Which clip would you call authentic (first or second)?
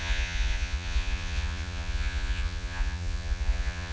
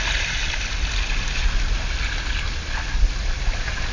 second